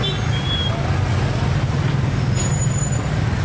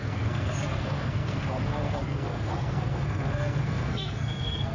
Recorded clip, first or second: first